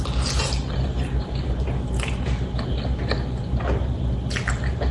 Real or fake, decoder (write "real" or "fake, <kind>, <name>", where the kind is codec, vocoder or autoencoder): real